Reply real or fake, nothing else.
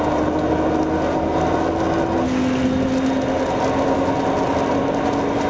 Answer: real